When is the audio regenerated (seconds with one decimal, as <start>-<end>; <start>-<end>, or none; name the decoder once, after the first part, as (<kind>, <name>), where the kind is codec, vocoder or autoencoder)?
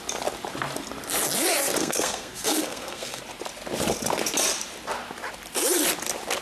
1.8-3.2 (codec, SNAC)